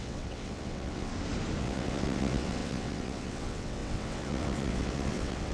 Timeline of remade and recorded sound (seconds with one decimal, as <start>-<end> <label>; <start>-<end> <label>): 0.0-1.1 remade; 1.1-1.6 recorded; 1.6-5.5 remade